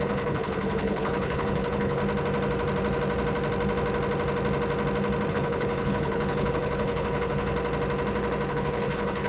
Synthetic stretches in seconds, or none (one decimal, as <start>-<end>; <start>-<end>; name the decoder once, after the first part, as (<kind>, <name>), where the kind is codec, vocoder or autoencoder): 0.0-2.0 (codec, HILCodec); 5.3-7.5; 8.5-9.3